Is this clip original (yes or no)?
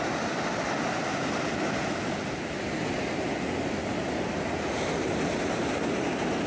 yes